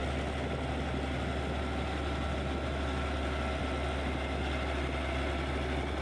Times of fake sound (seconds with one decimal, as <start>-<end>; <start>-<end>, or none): none